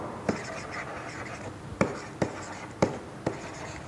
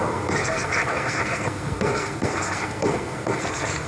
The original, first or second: first